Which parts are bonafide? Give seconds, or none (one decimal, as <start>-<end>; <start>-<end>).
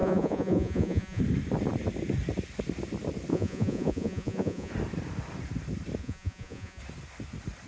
1.2-3.3; 4.7-6.0; 6.8-7.7